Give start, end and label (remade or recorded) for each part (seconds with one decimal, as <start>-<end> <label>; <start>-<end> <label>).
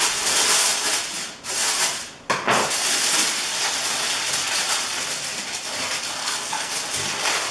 0.0-6.2 recorded; 6.2-6.7 remade; 6.7-7.5 recorded